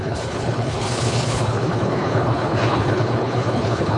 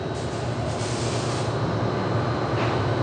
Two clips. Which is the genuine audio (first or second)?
second